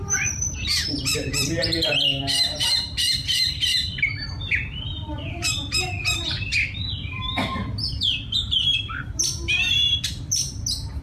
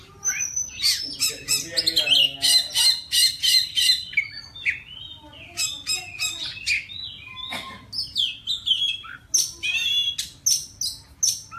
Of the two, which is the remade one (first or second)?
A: first